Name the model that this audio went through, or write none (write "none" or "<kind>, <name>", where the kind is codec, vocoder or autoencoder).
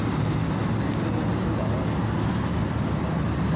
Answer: none